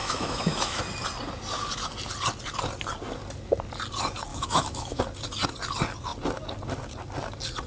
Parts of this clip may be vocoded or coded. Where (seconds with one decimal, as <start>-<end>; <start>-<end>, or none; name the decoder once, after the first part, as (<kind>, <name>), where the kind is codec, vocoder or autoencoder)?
0.0-0.8 (autoencoder, DAC-VAE); 4.3-5.0